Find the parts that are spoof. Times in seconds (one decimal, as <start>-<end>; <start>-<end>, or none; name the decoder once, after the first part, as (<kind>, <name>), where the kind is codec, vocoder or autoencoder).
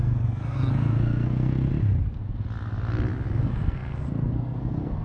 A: 0.0-1.7 (codec, SNAC); 3.4-5.0